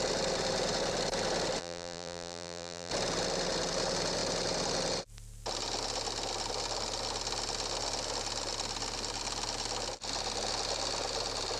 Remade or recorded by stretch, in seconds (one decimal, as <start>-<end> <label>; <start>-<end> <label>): 0.0-1.6 recorded; 1.6-2.9 remade; 2.9-11.6 recorded